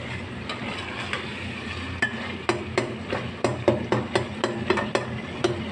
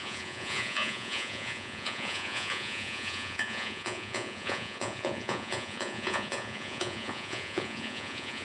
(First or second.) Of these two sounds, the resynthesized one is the second